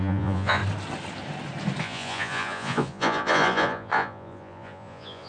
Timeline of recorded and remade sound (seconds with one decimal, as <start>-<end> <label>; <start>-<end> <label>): 0.0-0.6 remade; 0.6-1.8 recorded; 1.8-5.3 remade